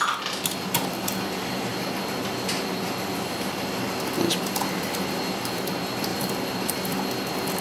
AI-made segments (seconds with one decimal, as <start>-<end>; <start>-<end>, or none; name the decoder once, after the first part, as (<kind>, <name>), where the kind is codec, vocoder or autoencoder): 1.7-5.2 (vocoder, BigVGAN v2); 6.1-6.7